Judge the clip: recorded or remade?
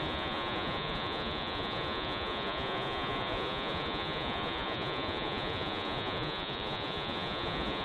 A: remade